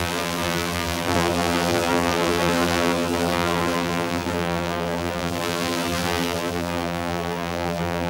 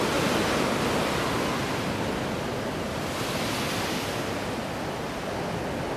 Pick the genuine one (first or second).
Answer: second